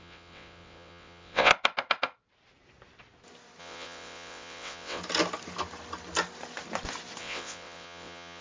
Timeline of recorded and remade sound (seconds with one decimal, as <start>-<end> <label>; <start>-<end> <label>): 0.0-1.5 remade; 1.5-3.6 recorded; 3.6-5.0 remade; 5.0-7.2 recorded; 7.2-8.4 remade